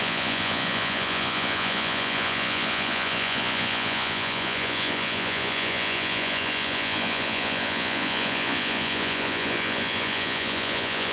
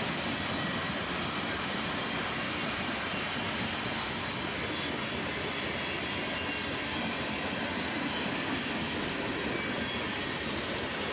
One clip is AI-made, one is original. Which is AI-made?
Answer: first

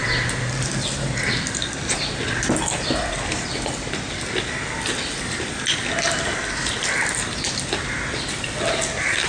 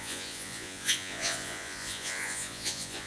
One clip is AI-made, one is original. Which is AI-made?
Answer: second